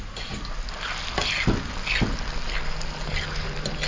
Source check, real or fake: real